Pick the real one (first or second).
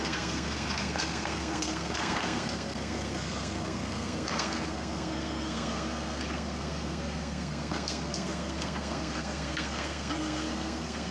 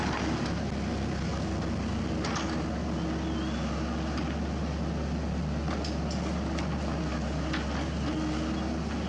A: second